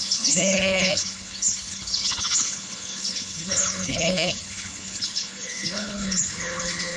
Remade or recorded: remade